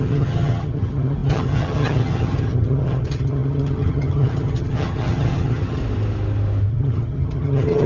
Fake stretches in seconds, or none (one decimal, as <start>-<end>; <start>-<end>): 0.0-5.8; 6.7-7.9